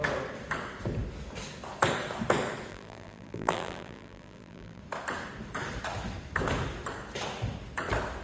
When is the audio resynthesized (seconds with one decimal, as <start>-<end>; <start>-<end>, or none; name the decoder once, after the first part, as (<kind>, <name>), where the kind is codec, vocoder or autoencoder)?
2.7-4.8 (vocoder, BigVGAN v2)